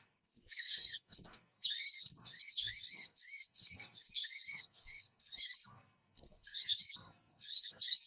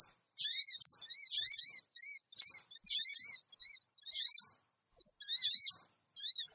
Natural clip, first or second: second